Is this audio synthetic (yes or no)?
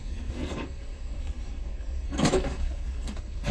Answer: yes